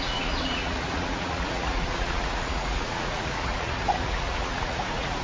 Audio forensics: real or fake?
fake